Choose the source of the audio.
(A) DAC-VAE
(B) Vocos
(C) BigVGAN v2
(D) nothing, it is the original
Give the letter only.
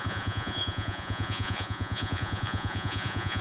B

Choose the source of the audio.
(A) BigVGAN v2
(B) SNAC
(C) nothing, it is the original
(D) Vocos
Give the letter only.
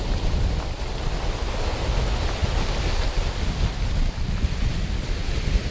C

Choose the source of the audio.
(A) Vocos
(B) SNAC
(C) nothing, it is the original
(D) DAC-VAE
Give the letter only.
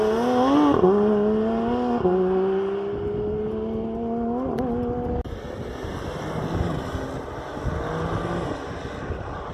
C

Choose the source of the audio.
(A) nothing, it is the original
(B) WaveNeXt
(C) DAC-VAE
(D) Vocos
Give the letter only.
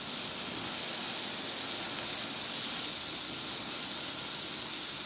A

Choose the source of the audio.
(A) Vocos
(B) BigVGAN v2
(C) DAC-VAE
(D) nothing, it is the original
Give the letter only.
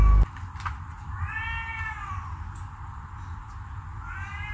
D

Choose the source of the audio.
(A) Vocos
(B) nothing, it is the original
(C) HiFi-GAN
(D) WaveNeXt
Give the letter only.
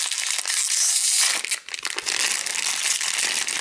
B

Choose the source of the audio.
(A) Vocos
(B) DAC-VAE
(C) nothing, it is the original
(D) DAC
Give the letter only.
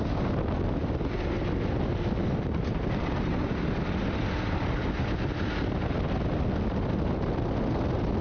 C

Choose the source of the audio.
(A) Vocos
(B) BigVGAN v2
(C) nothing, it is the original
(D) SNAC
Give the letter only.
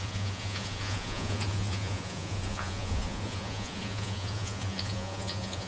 A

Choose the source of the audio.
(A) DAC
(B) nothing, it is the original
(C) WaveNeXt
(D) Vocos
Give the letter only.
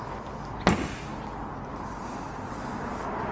B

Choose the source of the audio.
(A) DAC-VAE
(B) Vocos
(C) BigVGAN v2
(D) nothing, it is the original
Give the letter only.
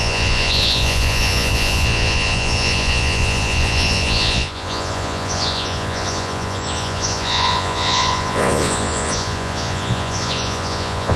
B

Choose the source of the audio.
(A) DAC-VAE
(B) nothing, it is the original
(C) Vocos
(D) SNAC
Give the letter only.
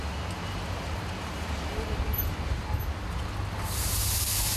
B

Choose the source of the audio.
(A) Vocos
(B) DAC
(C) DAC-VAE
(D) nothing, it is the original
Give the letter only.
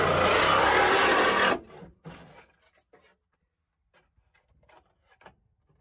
D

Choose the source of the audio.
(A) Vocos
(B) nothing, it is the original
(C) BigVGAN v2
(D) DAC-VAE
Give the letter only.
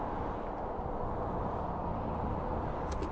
B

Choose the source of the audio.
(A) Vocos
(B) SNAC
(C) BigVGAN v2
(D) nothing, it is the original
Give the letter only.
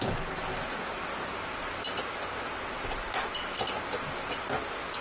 D